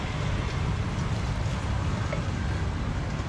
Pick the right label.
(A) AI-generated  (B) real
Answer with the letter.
B